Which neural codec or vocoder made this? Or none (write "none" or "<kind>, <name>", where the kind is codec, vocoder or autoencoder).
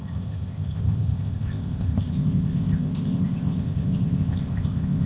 codec, ZipCodec